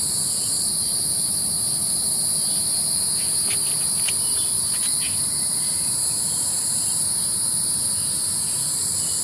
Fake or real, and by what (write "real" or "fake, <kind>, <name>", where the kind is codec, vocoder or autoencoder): real